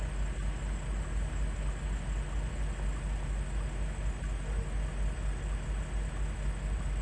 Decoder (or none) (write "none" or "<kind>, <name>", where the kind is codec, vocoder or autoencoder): none